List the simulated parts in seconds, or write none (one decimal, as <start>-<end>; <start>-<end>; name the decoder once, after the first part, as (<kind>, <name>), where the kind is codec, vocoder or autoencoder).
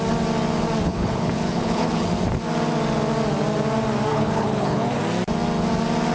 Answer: 0.9-2.1 (codec, HILCodec); 4.1-5.0